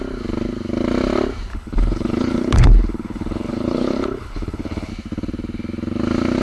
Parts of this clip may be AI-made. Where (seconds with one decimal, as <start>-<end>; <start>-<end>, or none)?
1.5-4.9